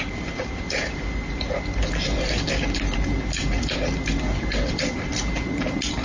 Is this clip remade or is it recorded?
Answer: recorded